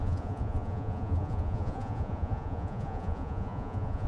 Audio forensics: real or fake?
fake